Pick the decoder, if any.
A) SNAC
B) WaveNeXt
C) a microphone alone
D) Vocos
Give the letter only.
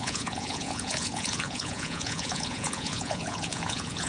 D